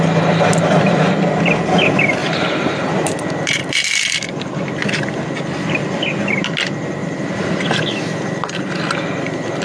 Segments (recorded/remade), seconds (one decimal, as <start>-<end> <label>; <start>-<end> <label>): 0.0-2.2 recorded; 2.2-4.3 remade; 4.3-7.0 recorded; 7.0-7.8 remade; 7.8-9.6 recorded